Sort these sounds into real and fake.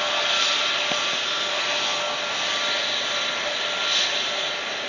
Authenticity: real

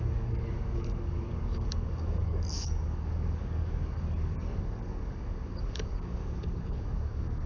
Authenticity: fake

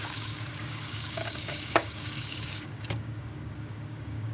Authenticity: fake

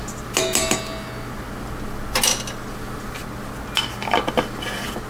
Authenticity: real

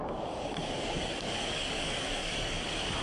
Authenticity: fake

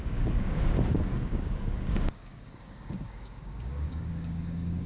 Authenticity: fake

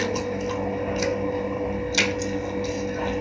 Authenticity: real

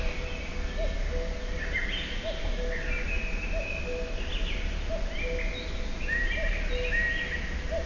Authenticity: real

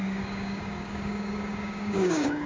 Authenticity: fake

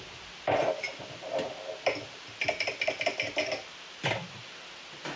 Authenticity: real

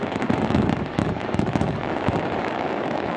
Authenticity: fake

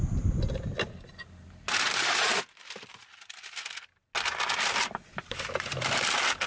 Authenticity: real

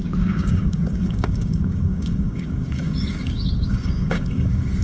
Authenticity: fake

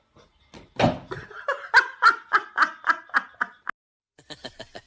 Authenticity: real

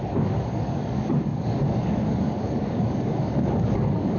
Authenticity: fake